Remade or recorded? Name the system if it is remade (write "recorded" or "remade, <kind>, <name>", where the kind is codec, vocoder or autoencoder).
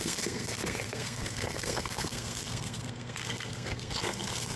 remade, codec, SNAC